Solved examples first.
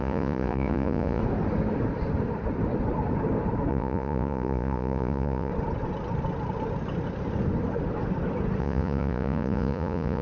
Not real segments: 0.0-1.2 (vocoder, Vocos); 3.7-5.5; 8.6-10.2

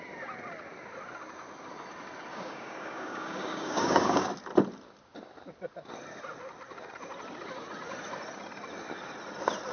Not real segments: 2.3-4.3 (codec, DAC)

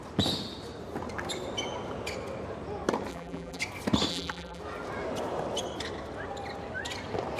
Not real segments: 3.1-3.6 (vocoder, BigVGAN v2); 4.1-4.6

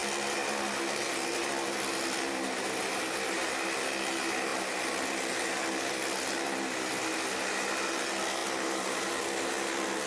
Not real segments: 4.5-5.1 (vocoder, BigVGAN v2); 8.4-9.0